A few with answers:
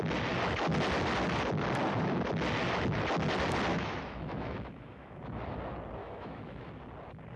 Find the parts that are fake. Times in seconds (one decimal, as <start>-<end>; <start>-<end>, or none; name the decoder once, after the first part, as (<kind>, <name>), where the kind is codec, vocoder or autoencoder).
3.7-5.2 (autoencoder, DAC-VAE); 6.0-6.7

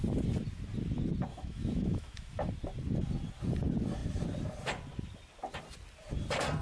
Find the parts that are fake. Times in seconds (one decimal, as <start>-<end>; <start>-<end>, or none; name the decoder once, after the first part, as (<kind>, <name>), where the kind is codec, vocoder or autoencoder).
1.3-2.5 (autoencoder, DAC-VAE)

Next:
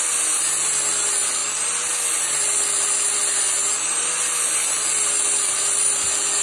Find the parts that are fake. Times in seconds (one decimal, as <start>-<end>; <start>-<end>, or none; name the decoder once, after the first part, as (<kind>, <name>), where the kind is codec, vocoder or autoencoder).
none

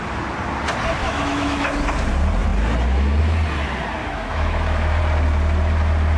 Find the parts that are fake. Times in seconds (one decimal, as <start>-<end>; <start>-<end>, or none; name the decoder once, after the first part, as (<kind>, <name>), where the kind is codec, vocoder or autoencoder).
1.0-1.8 (autoencoder, DAC-VAE); 4.0-5.0

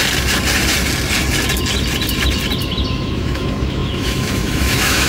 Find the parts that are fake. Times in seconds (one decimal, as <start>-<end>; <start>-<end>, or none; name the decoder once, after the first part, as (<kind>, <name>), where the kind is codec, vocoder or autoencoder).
2.9-5.1 (autoencoder, DAC-VAE)

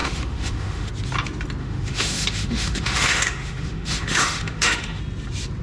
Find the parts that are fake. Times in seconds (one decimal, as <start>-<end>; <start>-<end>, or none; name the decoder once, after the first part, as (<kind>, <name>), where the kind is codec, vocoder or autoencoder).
0.0-0.9 (autoencoder, DAC-VAE); 1.6-5.0

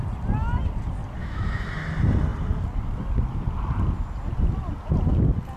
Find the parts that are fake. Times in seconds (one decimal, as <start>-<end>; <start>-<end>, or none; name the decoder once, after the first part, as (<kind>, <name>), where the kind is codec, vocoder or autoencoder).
1.2-1.7 (autoencoder, DAC-VAE)

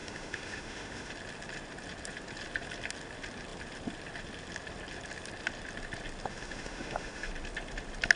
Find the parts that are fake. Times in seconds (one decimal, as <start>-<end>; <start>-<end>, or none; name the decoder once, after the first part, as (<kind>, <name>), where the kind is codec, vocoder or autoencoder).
0.0-1.1 (autoencoder, DAC-VAE); 6.3-7.3